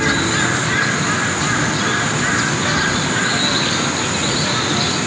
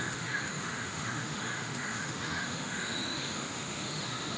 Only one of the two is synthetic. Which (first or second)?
second